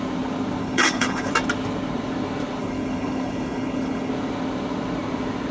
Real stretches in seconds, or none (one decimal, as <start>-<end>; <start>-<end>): 0.0-0.6; 1.3-2.6; 4.1-5.5